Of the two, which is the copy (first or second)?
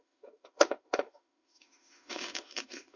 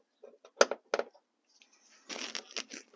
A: first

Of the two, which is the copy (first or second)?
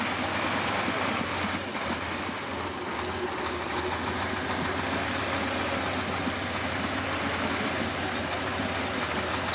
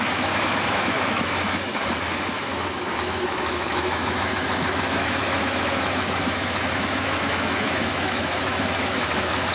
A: second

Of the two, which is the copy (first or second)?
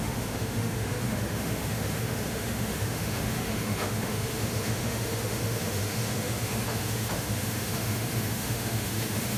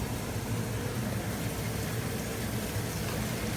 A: first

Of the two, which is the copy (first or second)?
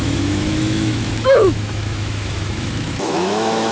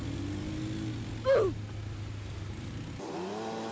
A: first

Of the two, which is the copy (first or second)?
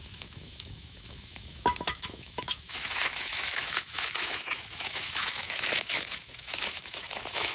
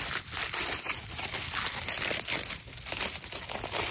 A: first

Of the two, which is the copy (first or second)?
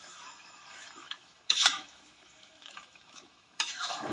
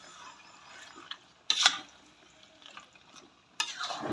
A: first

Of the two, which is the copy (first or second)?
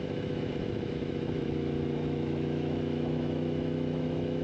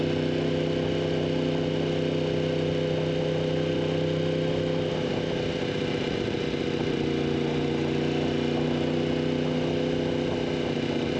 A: first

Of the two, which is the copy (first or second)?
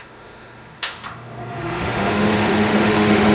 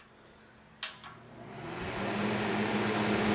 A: first